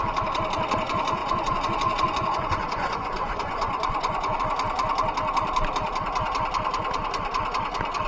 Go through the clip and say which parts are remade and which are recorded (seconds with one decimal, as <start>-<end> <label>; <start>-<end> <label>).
0.0-1.2 recorded; 1.2-4.4 remade; 4.4-8.1 recorded